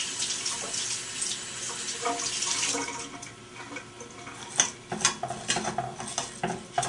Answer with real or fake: real